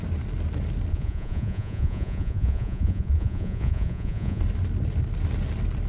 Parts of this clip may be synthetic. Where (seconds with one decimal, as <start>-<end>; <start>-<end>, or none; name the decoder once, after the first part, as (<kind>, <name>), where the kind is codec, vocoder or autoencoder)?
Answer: 0.9-4.4 (vocoder, Vocos)